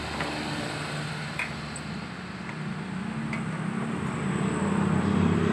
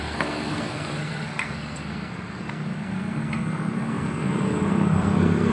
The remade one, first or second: second